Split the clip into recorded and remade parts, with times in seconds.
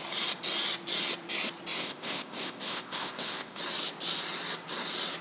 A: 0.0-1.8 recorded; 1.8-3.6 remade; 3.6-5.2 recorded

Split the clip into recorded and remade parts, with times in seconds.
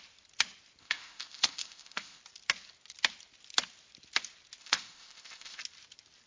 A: 0.0-0.8 recorded; 0.8-2.2 remade; 2.2-4.6 recorded; 4.6-5.6 remade; 5.6-6.3 recorded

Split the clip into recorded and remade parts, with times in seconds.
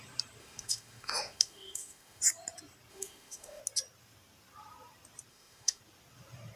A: 0.0-0.4 recorded; 0.4-2.2 remade; 2.2-2.9 recorded; 2.9-3.6 remade; 3.6-5.3 recorded; 5.3-5.8 remade; 5.8-6.6 recorded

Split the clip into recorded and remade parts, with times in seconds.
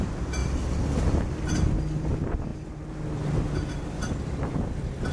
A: 0.0-5.1 recorded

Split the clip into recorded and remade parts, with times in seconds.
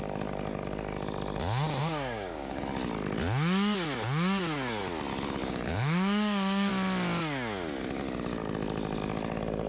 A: 0.0-1.8 recorded; 1.8-2.6 remade; 2.6-5.4 recorded; 5.4-6.7 remade; 6.7-9.7 recorded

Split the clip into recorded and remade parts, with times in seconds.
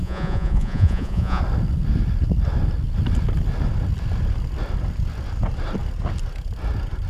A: 0.0-1.4 remade; 1.4-7.1 recorded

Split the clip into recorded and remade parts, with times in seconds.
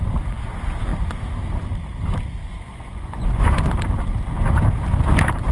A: 0.0-2.4 recorded; 2.4-3.7 remade; 3.7-5.5 recorded